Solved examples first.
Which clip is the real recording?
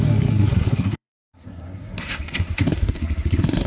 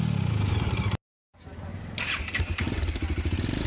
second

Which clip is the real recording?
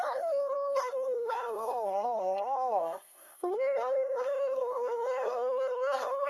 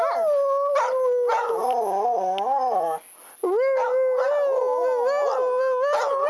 second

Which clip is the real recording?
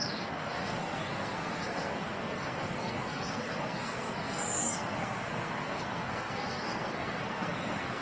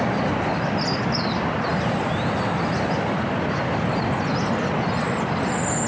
second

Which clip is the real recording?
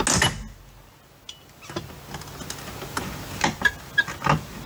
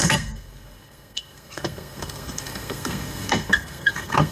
first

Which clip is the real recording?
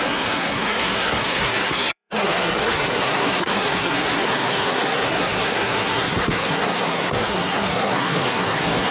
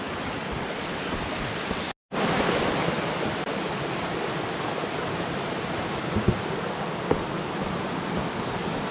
second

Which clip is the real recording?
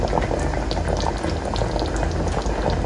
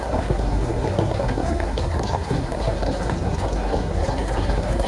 first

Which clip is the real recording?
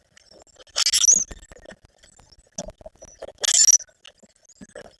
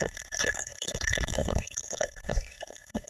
first